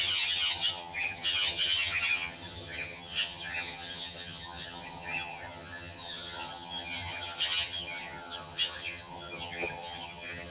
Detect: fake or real fake